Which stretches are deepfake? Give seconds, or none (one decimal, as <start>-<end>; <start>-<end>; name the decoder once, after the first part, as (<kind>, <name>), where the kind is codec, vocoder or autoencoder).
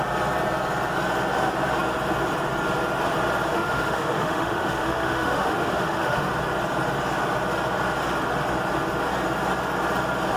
3.5-6.3 (autoencoder, DAC-VAE)